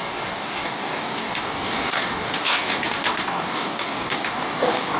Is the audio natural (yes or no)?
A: no